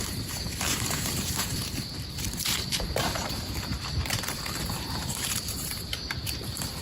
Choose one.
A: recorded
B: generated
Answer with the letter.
B